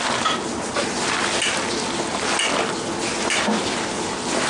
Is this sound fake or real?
real